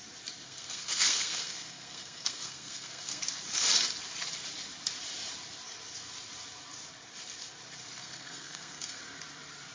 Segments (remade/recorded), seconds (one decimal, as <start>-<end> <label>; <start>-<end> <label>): 0.0-0.4 recorded; 0.4-3.2 remade; 3.2-8.0 recorded; 8.0-9.0 remade; 9.0-9.7 recorded